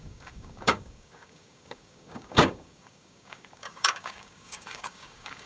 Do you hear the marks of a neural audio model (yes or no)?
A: yes